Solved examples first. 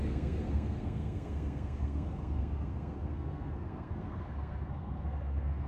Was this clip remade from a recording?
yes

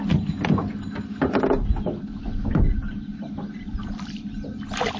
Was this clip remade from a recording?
no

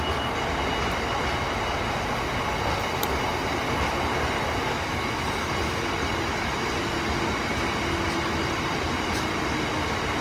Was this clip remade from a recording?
no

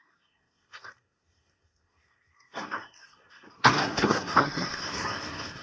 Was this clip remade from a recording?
yes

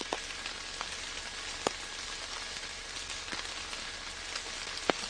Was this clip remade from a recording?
no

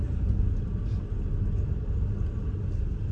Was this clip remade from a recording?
no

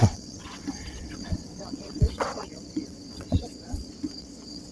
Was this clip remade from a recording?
yes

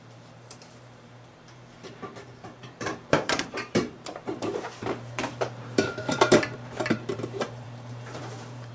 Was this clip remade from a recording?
yes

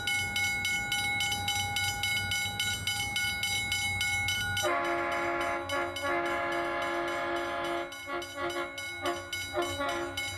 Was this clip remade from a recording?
no